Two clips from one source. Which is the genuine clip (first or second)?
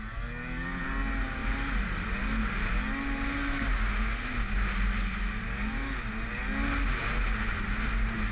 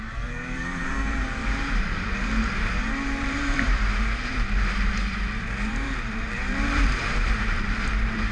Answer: first